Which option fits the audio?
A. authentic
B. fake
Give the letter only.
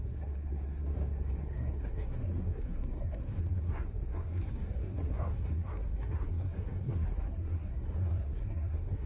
B